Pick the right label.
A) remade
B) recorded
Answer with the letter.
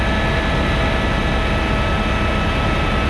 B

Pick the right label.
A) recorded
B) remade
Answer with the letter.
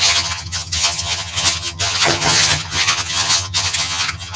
B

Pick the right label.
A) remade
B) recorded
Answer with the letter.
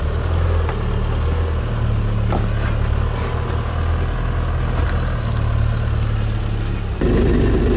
B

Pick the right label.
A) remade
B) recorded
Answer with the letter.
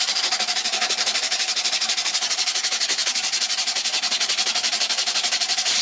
A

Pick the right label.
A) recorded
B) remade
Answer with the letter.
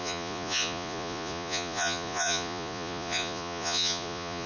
B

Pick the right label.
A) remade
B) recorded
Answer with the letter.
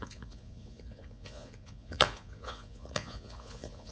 A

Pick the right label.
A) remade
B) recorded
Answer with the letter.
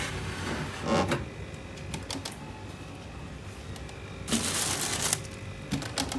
B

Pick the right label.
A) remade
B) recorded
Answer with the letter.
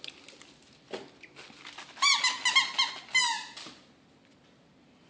B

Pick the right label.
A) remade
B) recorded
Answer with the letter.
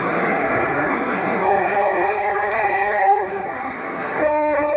A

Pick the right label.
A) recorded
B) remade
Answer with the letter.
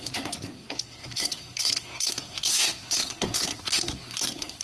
B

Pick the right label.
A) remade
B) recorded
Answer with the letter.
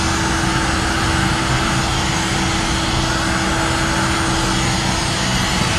B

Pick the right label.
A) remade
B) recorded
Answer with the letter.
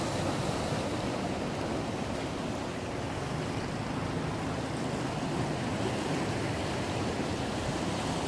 A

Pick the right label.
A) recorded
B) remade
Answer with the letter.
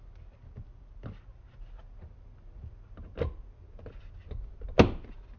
A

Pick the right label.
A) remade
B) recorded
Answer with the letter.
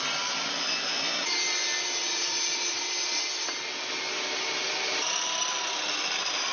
B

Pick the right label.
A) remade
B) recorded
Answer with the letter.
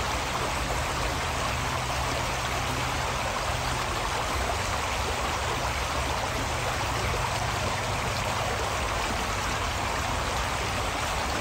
B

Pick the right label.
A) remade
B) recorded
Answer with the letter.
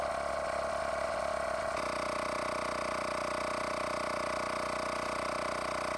B